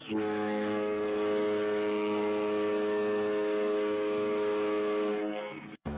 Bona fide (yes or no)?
no